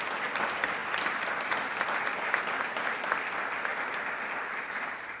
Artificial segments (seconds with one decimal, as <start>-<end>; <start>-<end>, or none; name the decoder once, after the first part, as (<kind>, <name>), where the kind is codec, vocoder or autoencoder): none